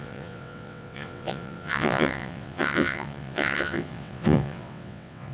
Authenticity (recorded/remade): remade